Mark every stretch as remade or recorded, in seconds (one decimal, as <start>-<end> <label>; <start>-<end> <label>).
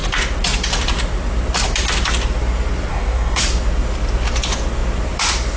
0.0-2.9 recorded; 2.9-3.4 remade; 3.4-5.6 recorded